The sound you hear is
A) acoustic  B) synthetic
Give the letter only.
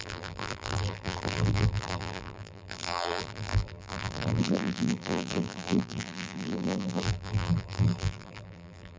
B